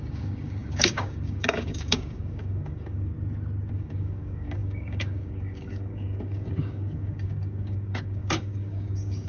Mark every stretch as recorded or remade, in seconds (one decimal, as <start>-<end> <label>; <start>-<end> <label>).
0.0-3.1 remade; 3.1-3.7 recorded; 3.7-9.3 remade